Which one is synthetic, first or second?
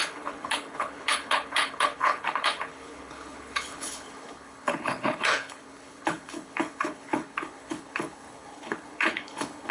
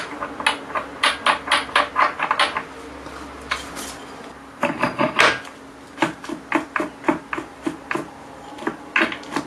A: first